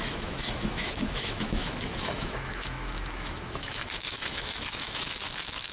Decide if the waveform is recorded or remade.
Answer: remade